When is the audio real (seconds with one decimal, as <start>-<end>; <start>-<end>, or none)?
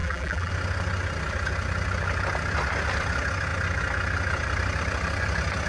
0.5-5.7